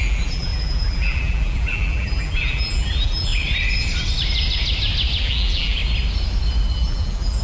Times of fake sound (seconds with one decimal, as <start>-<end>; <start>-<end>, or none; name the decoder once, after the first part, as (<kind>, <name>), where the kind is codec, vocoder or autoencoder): 0.0-3.3 (vocoder, BigVGAN v2); 5.2-5.8; 6.7-7.4